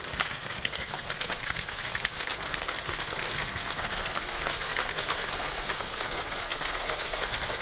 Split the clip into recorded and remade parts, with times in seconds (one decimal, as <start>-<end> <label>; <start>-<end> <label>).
0.0-7.6 remade